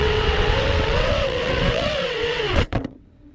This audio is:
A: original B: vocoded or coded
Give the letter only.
B